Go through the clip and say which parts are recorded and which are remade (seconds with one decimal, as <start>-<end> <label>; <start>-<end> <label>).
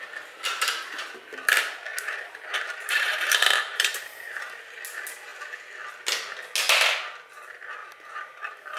0.0-1.9 recorded; 1.9-4.8 remade; 4.8-7.8 recorded; 7.8-8.4 remade; 8.4-8.8 recorded